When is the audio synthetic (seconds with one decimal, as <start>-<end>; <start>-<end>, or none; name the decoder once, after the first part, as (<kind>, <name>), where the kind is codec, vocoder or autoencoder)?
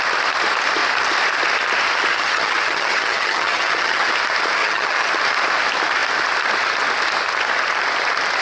2.1-4.1 (vocoder, HiFi-GAN); 4.6-5.1